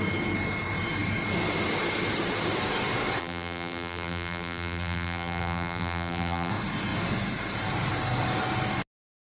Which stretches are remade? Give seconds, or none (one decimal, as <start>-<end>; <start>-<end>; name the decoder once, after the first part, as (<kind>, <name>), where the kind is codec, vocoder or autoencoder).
3.2-6.5 (vocoder, BigVGAN v2)